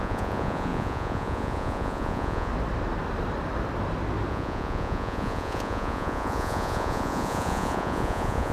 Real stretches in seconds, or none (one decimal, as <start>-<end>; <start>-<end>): 2.5-4.3